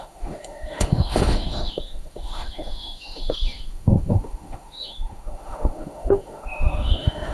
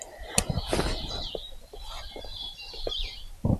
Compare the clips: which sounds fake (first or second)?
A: first